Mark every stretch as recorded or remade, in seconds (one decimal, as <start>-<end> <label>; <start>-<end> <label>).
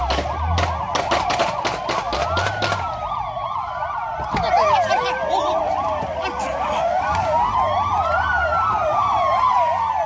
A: 0.0-10.1 recorded